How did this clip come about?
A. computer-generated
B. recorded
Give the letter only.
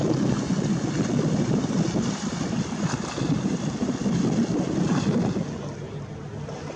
B